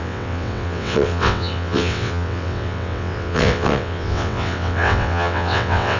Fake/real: fake